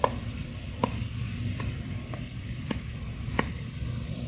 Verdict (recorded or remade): recorded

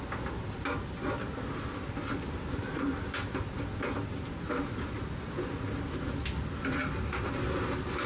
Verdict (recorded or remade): recorded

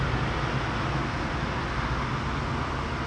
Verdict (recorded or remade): recorded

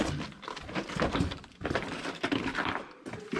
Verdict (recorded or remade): remade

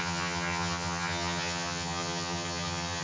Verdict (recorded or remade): remade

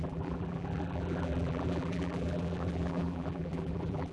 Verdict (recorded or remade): remade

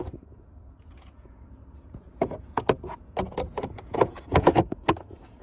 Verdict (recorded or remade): remade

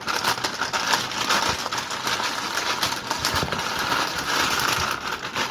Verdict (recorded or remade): recorded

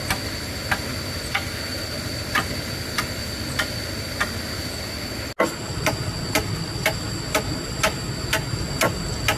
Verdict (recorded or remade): recorded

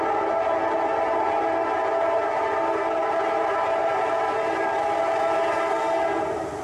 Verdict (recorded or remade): remade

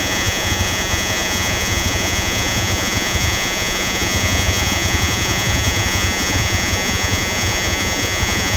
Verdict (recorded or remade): remade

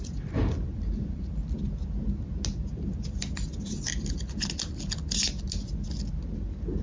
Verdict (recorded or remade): recorded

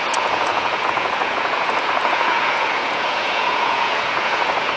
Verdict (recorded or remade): remade